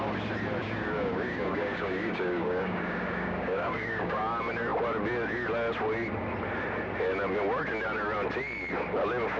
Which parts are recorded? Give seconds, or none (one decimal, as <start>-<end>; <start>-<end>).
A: 0.0-0.6; 4.2-9.4